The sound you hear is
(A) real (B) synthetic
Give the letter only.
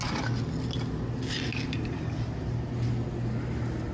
A